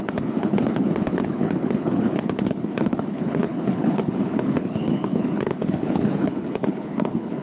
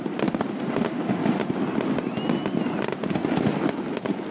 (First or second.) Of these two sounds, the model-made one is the first